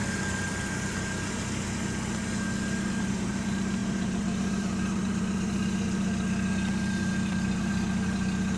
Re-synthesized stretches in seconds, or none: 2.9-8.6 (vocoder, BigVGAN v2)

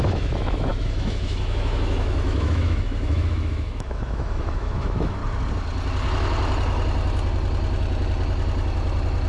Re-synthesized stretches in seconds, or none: 0.0-5.2 (autoencoder, DAC-VAE)

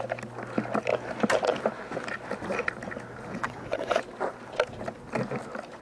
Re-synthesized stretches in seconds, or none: 3.3-4.0 (vocoder, WaveNeXt)

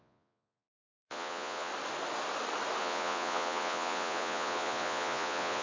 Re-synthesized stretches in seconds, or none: 0.0-1.7 (vocoder, Vocos); 2.8-5.6

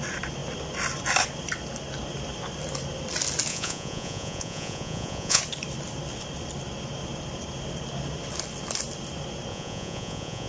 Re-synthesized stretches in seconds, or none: 3.5-5.4 (vocoder, Vocos); 9.5-10.5